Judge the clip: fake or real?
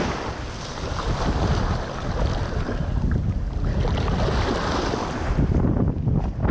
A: real